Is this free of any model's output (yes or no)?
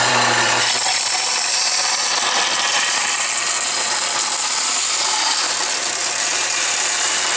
no